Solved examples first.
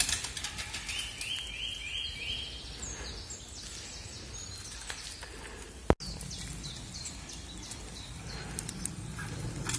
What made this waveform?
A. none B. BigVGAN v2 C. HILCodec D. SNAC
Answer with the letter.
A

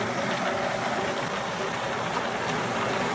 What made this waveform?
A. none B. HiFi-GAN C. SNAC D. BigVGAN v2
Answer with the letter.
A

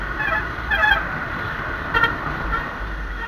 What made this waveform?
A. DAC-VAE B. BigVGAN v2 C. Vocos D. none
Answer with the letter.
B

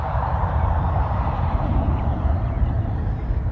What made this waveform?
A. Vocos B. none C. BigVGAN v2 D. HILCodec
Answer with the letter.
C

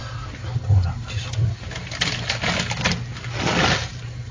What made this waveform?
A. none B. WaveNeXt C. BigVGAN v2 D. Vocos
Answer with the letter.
A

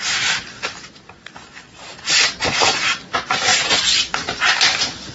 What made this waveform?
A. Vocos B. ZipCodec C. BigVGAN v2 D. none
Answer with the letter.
D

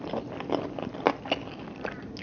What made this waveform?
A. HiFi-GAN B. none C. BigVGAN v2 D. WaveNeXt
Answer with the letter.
B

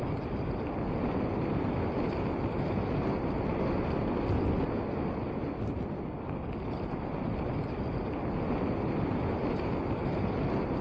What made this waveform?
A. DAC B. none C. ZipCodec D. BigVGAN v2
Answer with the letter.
B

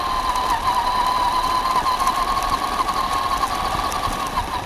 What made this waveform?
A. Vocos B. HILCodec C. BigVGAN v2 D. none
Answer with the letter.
D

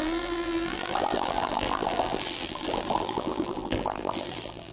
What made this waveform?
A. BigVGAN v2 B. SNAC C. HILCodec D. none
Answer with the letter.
A